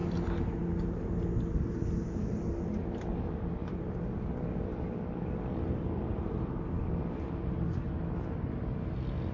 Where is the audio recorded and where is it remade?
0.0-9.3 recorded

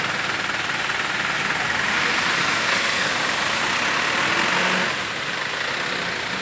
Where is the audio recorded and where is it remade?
0.0-2.4 recorded; 2.4-3.1 remade; 3.1-6.4 recorded

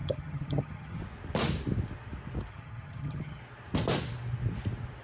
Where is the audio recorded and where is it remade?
0.0-1.0 remade; 1.0-2.5 recorded; 2.5-3.4 remade; 3.4-5.0 recorded

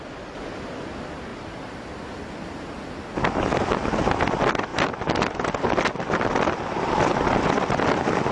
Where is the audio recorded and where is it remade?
0.0-8.3 recorded